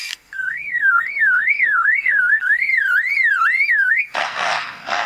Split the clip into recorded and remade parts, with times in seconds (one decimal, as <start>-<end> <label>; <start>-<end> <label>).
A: 0.0-2.7 remade; 2.7-3.7 recorded; 3.7-5.1 remade